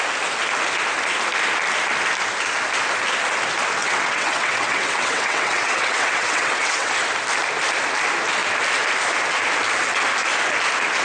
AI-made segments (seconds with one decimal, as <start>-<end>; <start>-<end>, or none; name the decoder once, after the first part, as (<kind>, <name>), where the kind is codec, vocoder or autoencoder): 3.8-6.9 (vocoder, WaveNeXt)